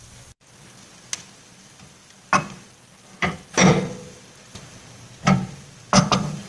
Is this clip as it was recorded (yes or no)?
yes